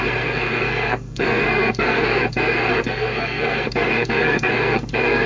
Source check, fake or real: fake